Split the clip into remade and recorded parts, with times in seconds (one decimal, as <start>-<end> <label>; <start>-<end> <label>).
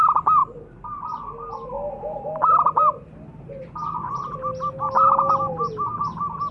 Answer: 0.0-6.5 recorded